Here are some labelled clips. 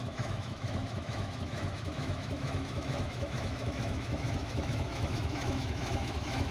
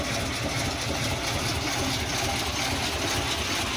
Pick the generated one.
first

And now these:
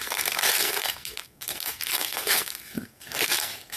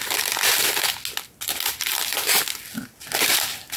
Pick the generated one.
first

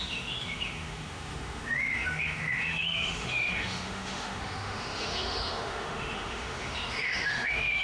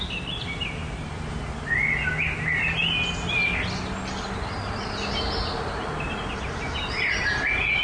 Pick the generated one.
first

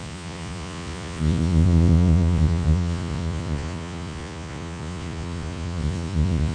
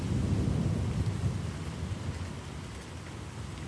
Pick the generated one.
first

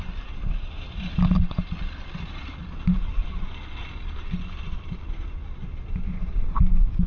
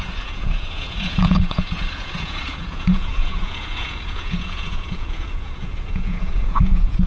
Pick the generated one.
second